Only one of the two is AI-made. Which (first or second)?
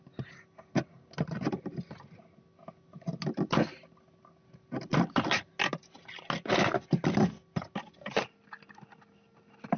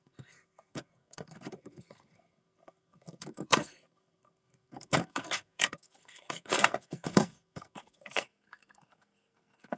second